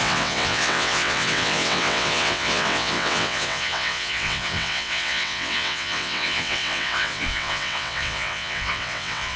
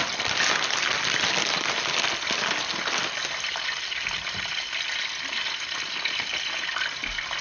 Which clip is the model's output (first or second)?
first